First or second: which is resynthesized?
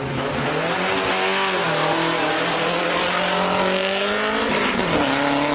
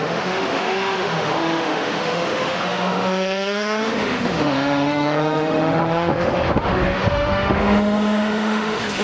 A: second